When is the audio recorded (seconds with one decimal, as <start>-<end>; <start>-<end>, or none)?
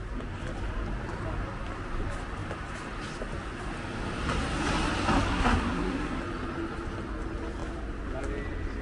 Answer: 0.0-5.3; 6.2-8.8